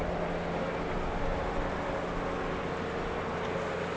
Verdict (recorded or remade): recorded